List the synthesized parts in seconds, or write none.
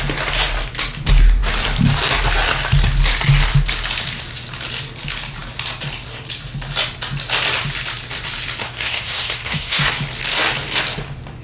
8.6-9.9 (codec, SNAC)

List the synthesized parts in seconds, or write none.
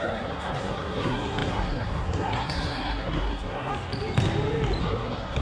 0.0-3.7 (codec, SNAC); 4.8-5.4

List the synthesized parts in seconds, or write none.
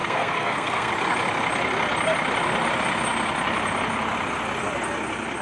0.0-0.9 (codec, SNAC)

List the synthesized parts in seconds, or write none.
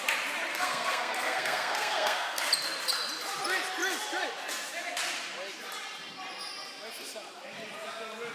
0.5-2.5 (codec, SNAC)